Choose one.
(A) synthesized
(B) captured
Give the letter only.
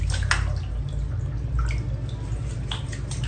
B